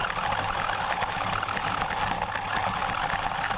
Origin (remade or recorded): recorded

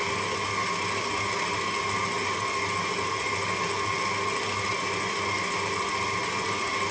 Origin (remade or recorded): recorded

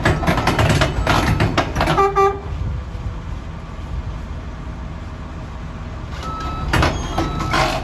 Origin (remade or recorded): recorded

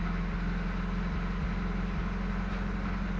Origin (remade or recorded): recorded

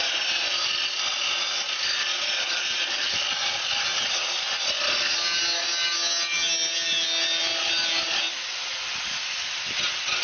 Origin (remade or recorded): recorded